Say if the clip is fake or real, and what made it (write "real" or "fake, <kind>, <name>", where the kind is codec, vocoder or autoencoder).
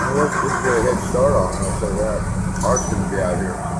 real